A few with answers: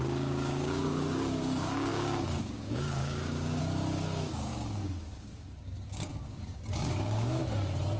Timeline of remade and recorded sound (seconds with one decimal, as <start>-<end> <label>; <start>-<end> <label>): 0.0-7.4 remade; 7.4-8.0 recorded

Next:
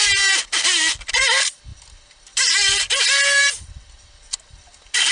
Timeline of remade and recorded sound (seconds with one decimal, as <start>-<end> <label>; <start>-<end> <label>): 0.0-5.1 recorded

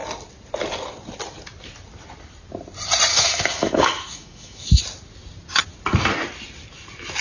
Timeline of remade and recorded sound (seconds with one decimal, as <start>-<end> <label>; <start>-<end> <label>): 0.0-3.1 recorded; 3.1-4.8 remade; 4.8-7.2 recorded

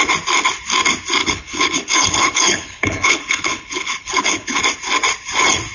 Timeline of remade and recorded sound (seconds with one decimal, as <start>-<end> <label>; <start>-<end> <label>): 0.0-1.2 recorded; 1.2-4.6 remade; 4.6-5.7 recorded